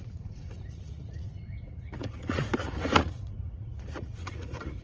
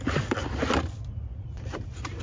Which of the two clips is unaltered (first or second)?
second